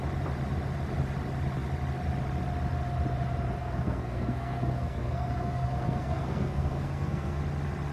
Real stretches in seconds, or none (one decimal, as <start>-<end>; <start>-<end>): 0.0-3.6; 7.4-7.9